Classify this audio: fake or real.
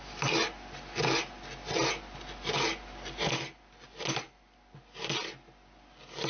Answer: real